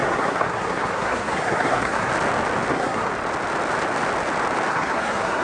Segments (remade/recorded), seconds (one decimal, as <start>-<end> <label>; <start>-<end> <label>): 0.0-2.1 remade; 2.1-2.7 recorded; 2.7-3.1 remade; 3.1-4.7 recorded; 4.7-5.4 remade